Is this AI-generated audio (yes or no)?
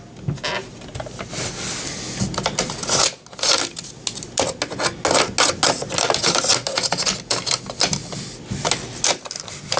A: no